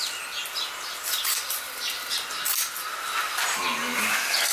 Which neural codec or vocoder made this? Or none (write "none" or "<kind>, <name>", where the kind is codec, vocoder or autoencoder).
none